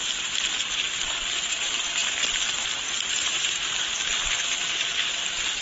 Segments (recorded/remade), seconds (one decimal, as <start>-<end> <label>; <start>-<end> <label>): 0.0-2.0 remade; 2.0-2.6 recorded; 2.6-5.6 remade